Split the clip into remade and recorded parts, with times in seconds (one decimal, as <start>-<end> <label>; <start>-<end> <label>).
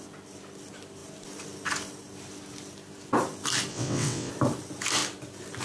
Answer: 0.0-3.7 recorded; 3.7-4.3 remade; 4.3-5.6 recorded